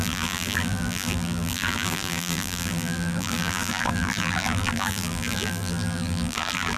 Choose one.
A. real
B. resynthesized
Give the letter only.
B